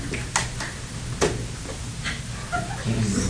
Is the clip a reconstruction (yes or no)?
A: no